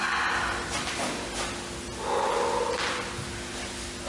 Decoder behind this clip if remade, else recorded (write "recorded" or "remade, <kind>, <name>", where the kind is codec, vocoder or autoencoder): recorded